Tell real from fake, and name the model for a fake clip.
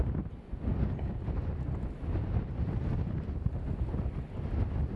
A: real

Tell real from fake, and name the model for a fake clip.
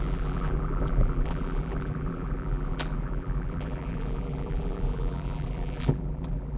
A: fake, vocoder, BigVGAN v2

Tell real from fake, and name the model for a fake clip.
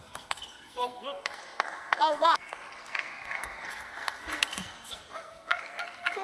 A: fake, codec, SNAC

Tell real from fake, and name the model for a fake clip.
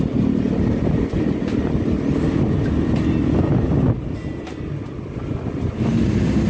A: real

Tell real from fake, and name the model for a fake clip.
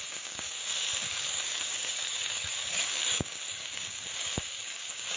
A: fake, codec, DAC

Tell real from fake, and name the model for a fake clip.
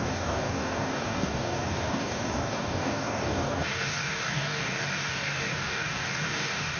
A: fake, codec, DAC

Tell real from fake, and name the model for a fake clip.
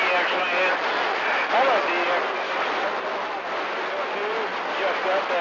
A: real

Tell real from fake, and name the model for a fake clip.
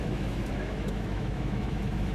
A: fake, autoencoder, DAC-VAE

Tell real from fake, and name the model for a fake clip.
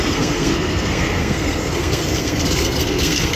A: fake, codec, SNAC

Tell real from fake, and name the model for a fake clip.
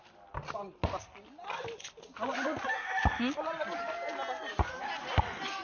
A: real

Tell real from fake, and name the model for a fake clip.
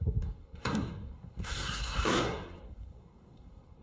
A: fake, codec, SNAC